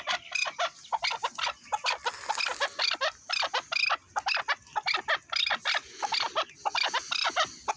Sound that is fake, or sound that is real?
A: real